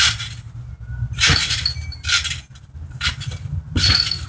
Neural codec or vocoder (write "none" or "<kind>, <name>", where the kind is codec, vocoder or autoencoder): none